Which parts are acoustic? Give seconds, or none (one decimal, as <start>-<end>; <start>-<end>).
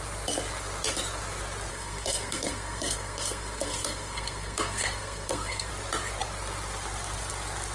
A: 0.0-1.7; 5.7-7.7